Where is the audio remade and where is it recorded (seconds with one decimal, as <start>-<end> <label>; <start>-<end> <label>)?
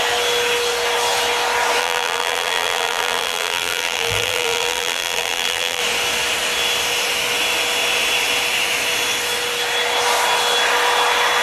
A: 0.0-1.8 recorded; 1.8-5.8 remade; 5.8-11.4 recorded